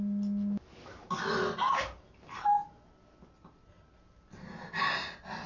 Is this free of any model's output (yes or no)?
yes